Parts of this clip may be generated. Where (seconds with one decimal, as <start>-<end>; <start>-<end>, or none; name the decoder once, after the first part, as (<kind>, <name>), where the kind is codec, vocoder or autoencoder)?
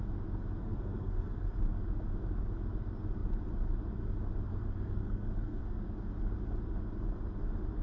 0.6-1.6 (codec, SNAC); 4.5-5.6